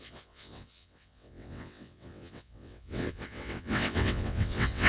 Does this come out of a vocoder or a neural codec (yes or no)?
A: yes